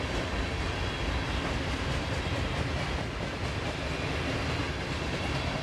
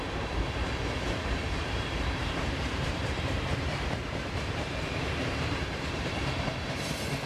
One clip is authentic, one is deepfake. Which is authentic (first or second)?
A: first